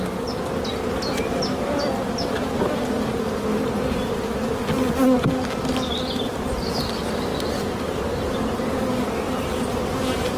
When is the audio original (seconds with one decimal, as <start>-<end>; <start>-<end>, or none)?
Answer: 0.0-10.4